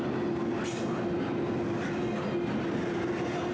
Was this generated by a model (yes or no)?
no